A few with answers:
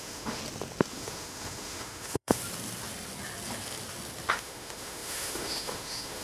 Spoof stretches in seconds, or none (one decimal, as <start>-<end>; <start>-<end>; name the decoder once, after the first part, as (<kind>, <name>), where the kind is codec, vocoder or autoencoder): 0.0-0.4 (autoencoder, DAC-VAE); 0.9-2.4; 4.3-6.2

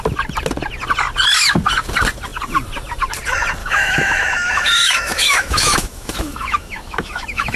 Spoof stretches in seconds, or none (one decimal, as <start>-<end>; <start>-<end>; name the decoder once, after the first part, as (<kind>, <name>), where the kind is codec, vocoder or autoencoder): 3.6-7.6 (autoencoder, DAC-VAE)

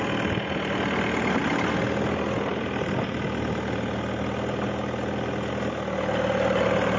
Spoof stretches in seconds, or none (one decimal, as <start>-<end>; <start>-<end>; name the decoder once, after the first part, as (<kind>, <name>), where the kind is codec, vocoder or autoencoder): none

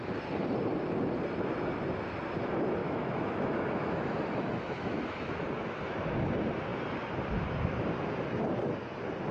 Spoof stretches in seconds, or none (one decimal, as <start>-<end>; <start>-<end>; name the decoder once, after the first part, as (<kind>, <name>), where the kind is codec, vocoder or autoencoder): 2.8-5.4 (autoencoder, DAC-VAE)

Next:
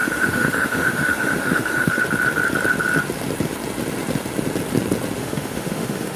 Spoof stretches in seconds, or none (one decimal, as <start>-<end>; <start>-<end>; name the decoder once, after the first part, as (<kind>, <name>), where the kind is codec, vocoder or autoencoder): 0.0-2.0 (autoencoder, DAC-VAE); 5.2-6.2

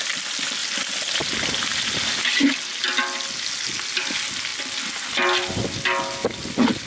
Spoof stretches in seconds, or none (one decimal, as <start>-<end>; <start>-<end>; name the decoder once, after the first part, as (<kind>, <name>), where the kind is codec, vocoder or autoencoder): none

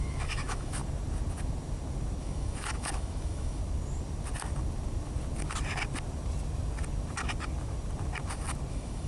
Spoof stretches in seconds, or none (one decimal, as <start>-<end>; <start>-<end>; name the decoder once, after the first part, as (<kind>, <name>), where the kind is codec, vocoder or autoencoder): 0.0-0.8 (autoencoder, DAC-VAE); 2.2-3.6; 8.7-9.1

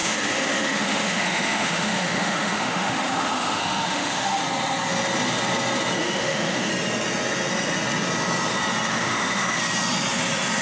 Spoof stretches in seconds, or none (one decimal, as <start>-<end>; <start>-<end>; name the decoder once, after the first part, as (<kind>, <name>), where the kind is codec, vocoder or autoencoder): 0.0-4.4 (autoencoder, DAC-VAE); 6.0-6.7; 8.9-9.6